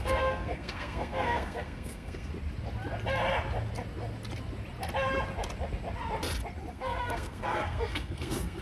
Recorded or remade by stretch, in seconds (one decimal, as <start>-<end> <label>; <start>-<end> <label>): 0.0-2.3 remade; 2.3-6.7 recorded; 6.7-8.6 remade